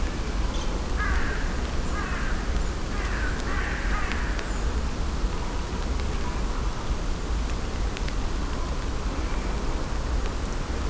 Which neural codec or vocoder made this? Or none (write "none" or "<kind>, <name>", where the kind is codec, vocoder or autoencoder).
none